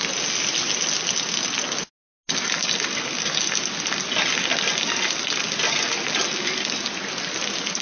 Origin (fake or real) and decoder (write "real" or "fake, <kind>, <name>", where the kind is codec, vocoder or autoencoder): real